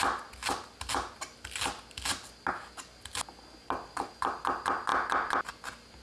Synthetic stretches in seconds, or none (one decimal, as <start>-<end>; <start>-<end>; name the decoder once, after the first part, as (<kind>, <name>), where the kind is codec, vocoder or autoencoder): none